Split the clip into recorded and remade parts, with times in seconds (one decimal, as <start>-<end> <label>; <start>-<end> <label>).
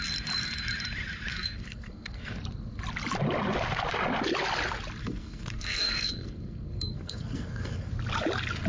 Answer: 0.0-1.3 recorded; 1.3-2.3 remade; 2.3-5.0 recorded; 5.0-7.9 remade; 7.9-8.7 recorded